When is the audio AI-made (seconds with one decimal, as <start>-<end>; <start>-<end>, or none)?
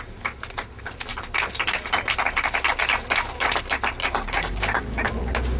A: 4.0-5.1